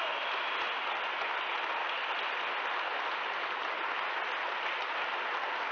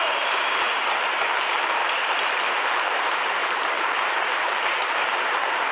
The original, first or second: first